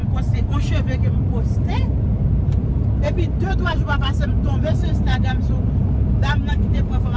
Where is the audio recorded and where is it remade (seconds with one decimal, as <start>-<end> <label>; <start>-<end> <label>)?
0.0-7.2 remade